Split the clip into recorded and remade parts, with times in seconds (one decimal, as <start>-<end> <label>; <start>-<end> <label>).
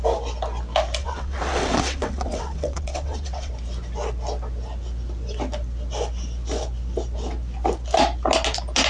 0.0-1.0 recorded; 1.0-3.5 remade; 3.5-8.9 recorded